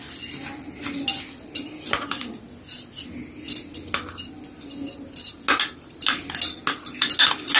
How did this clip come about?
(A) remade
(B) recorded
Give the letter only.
B